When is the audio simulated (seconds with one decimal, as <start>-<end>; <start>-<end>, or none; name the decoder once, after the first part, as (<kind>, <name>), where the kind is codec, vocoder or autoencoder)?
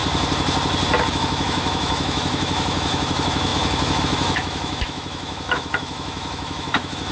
1.1-7.1 (autoencoder, DAC-VAE)